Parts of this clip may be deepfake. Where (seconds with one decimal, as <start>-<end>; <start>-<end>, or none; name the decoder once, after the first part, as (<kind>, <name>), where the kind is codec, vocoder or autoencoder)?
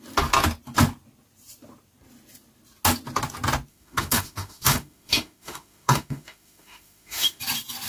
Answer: 3.7-7.4 (autoencoder, DAC-VAE)